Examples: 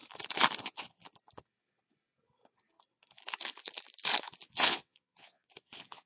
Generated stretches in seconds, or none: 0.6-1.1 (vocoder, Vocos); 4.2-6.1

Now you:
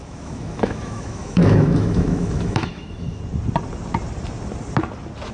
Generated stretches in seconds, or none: 0.0-3.2 (autoencoder, DAC-VAE)